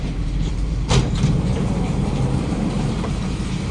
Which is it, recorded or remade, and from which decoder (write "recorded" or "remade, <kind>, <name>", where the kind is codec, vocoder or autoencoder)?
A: remade, vocoder, BigVGAN v2